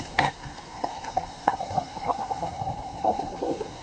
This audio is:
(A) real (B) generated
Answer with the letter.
B